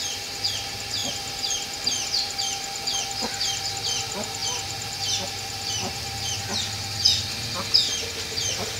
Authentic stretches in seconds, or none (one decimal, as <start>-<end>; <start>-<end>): 0.0-1.0; 3.6-4.4; 6.5-8.8